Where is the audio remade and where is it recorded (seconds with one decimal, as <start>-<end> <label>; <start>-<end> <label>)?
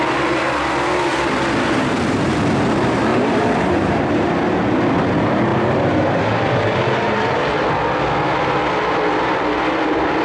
0.0-3.1 recorded; 3.1-4.0 remade; 4.0-5.5 recorded; 5.5-7.5 remade; 7.5-10.2 recorded